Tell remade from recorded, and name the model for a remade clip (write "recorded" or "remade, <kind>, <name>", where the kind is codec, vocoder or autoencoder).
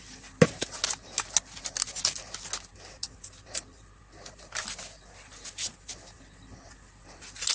recorded